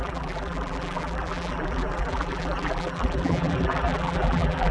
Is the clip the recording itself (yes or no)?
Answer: no